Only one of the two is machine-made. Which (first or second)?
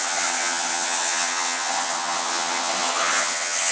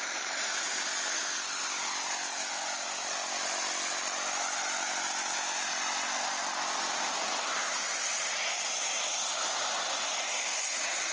first